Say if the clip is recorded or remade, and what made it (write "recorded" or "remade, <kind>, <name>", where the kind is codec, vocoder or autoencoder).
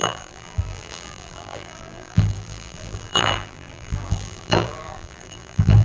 remade, vocoder, BigVGAN v2